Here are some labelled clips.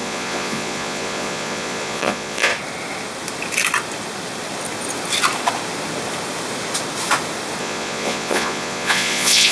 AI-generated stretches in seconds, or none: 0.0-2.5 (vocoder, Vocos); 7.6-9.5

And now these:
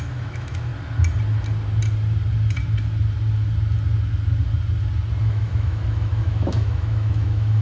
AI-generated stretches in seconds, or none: 0.0-0.7 (autoencoder, DAC-VAE); 5.2-7.6